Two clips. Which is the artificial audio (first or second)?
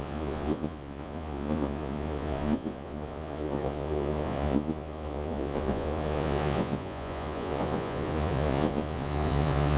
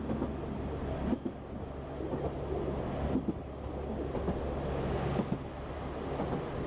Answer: first